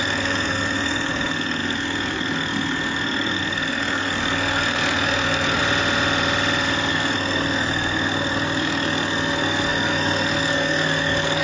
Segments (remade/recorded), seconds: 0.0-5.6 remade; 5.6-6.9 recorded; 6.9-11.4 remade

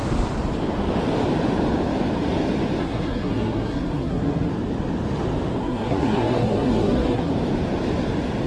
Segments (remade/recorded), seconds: 0.0-2.8 recorded; 2.8-4.5 remade; 4.5-5.6 recorded; 5.6-7.3 remade; 7.3-8.5 recorded

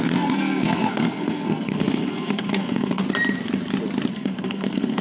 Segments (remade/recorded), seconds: 0.0-3.0 remade; 3.0-4.1 recorded; 4.1-5.0 remade

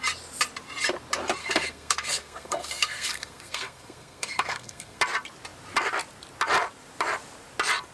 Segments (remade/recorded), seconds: 0.0-1.4 recorded; 1.4-5.0 remade; 5.0-7.9 recorded

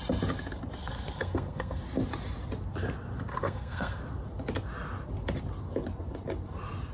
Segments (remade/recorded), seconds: 0.0-0.8 recorded; 0.8-1.8 remade; 1.8-3.3 recorded; 3.3-4.0 remade; 4.0-6.9 recorded

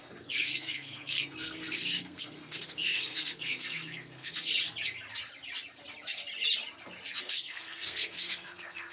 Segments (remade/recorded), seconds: 0.0-4.5 remade; 4.5-7.2 recorded; 7.2-8.9 remade

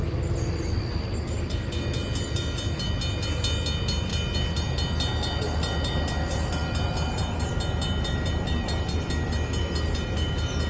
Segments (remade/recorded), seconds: 0.0-10.7 recorded

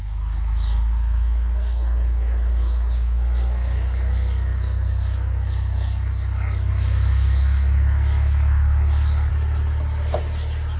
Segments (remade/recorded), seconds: 0.0-9.3 remade; 9.3-10.8 recorded